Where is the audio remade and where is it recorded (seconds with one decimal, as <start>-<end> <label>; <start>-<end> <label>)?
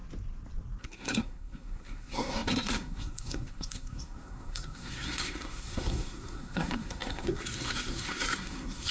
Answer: 0.0-0.8 recorded; 0.8-8.9 remade